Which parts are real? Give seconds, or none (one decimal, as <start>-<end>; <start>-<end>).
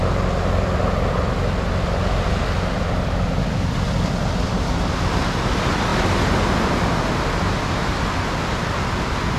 0.0-9.4